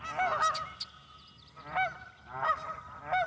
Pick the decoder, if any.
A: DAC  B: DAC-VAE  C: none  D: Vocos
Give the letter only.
C